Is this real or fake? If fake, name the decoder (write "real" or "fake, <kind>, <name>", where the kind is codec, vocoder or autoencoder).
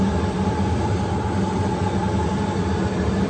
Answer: fake, vocoder, BigVGAN v2